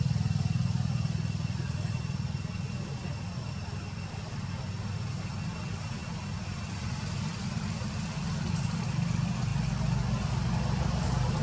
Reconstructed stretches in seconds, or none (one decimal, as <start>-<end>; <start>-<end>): none